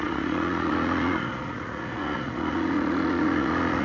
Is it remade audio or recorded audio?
remade